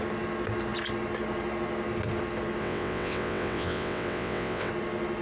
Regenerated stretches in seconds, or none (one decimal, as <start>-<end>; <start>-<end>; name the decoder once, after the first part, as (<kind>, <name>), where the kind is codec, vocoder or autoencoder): 2.6-4.7 (vocoder, WaveNeXt)